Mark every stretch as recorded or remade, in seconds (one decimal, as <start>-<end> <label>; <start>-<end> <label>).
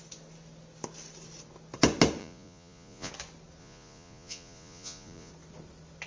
0.0-2.2 recorded; 2.2-3.1 remade; 3.1-3.6 recorded; 3.6-5.3 remade; 5.3-6.1 recorded